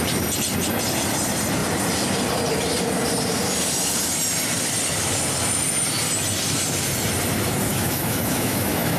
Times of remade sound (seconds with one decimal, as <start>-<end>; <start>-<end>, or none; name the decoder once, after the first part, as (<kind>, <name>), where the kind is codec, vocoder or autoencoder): 7.7-9.0 (autoencoder, DAC-VAE)